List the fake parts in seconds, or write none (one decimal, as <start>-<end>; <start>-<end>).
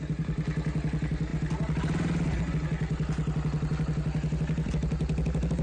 none